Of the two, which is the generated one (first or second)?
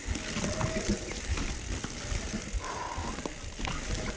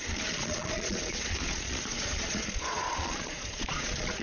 second